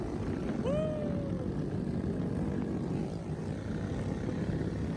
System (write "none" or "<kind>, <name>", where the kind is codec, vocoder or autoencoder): none